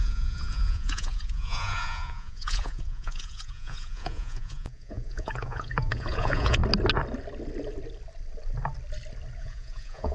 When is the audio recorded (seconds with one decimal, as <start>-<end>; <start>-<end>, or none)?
6.6-9.4